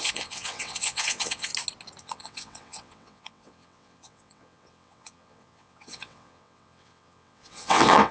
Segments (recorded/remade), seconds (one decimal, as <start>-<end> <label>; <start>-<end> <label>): 0.0-1.5 remade; 1.5-2.0 recorded; 2.0-8.1 remade